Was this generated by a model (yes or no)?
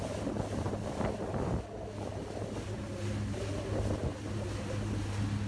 no